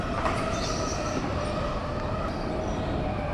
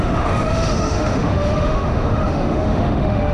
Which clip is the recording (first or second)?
first